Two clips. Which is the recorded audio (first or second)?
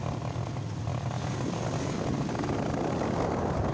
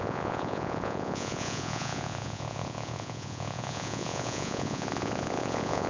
first